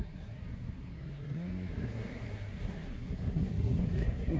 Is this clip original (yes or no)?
no